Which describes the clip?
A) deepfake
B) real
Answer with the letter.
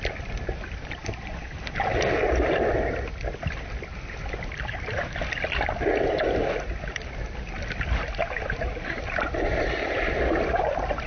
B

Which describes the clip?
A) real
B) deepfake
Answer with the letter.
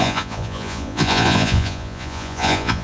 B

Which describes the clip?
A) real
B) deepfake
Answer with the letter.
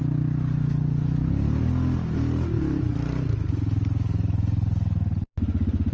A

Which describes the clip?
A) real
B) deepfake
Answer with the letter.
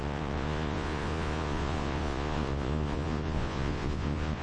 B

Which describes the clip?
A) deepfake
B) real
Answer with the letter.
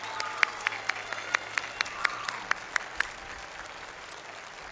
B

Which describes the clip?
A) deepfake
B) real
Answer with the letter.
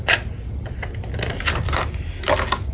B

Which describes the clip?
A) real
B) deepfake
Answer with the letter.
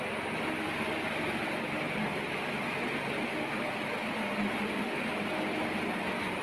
A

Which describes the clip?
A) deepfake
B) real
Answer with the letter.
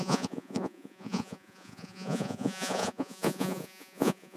A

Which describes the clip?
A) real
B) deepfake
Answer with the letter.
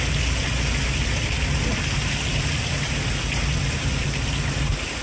A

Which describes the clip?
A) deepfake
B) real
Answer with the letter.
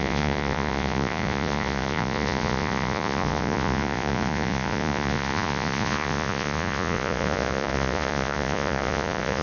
A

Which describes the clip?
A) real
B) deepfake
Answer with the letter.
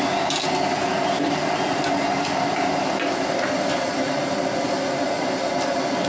A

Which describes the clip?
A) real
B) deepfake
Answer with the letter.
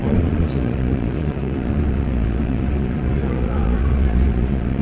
B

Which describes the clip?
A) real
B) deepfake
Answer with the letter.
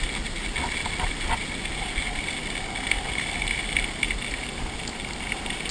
A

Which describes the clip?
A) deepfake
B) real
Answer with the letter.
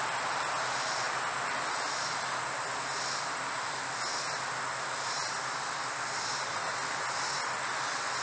B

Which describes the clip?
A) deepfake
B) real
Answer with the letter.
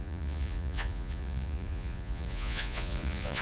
A